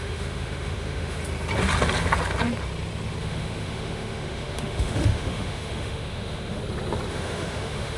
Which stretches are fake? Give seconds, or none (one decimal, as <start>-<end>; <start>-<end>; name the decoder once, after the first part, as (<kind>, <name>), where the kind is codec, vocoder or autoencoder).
0.0-1.2 (autoencoder, DAC-VAE); 3.2-6.6; 7.1-8.0